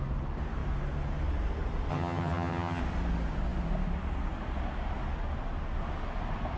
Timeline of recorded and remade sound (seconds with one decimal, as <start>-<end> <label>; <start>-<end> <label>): 0.0-1.9 recorded; 1.9-2.8 remade; 2.8-6.6 recorded